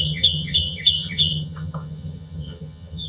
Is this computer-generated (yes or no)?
yes